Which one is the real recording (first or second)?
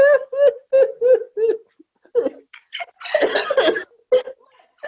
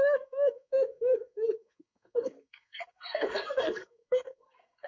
first